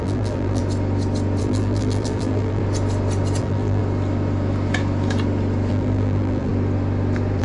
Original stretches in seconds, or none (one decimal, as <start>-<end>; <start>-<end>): 0.6-1.4; 2.6-3.4; 3.8-5.7; 6.5-7.4

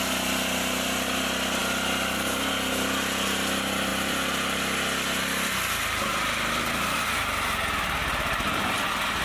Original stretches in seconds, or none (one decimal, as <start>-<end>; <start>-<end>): 0.0-3.9; 7.2-8.0; 8.7-9.2

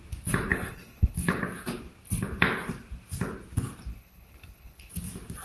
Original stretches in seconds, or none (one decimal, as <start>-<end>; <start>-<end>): 0.0-0.5; 1.4-3.9; 4.9-5.4

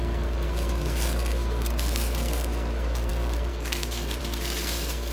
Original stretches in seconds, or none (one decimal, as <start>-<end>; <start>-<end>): none

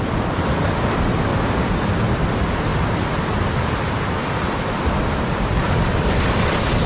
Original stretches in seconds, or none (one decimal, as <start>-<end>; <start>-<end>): 2.7-5.2

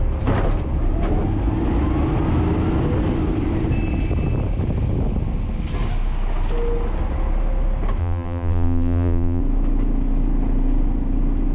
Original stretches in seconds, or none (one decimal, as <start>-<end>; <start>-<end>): 0.0-8.0; 9.4-11.5

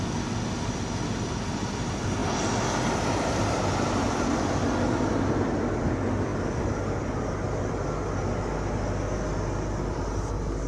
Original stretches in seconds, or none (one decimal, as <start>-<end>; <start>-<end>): 0.0-10.7